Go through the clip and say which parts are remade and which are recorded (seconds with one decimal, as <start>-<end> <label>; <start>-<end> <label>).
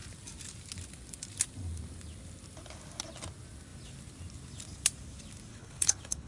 0.0-5.5 recorded; 5.5-6.3 remade